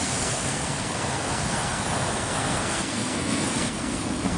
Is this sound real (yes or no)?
no